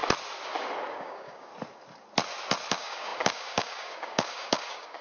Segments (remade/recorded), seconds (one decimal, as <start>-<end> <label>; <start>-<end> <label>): 0.0-0.9 recorded; 0.9-1.5 remade; 1.5-2.7 recorded; 2.7-5.0 remade